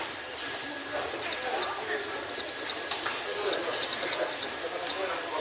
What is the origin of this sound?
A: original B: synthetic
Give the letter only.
A